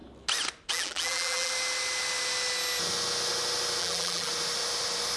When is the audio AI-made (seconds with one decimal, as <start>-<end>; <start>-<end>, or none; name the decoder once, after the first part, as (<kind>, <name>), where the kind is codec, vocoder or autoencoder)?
0.7-1.5 (vocoder, BigVGAN v2); 3.8-4.3